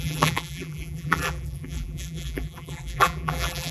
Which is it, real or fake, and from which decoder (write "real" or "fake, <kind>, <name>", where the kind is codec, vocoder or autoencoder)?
fake, vocoder, BigVGAN v2